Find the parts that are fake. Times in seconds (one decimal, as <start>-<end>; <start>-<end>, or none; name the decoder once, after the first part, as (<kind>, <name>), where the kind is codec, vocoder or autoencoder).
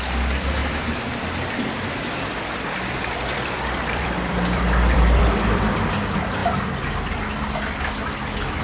0.6-5.7 (vocoder, BigVGAN v2)